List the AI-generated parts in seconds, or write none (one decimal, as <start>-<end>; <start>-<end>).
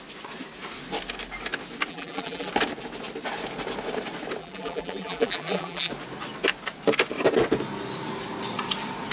1.9-2.5; 4.4-5.9